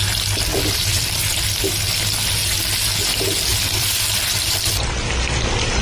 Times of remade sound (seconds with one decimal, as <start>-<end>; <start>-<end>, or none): 0.5-1.3; 3.5-4.7